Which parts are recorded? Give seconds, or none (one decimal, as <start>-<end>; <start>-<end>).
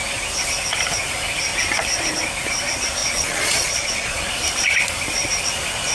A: 0.0-3.0; 4.3-5.9